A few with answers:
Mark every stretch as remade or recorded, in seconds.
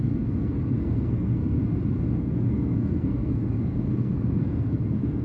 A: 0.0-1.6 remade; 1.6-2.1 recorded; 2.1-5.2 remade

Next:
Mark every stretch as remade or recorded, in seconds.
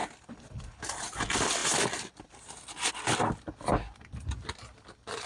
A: 0.0-5.3 recorded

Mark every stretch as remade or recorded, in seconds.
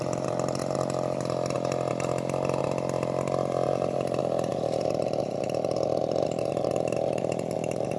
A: 0.0-0.6 remade; 0.6-3.7 recorded; 3.7-8.0 remade